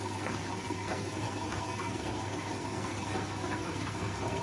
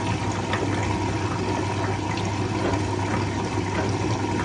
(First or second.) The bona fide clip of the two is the second